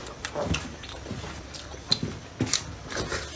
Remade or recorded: recorded